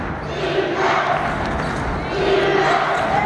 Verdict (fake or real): real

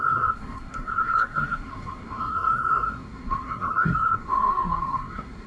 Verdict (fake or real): fake